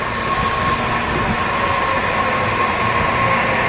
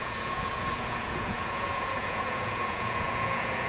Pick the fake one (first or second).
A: second